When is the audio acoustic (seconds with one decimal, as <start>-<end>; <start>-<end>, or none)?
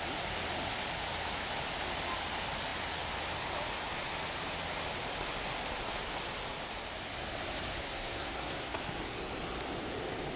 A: 0.0-7.8; 8.8-10.4